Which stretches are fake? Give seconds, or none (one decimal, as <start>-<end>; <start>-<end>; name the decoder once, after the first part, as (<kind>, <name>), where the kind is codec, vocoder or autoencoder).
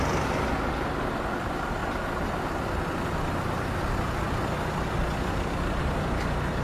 none